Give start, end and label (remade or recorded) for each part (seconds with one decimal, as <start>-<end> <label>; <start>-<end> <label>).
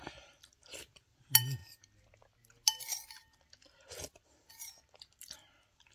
0.0-5.9 recorded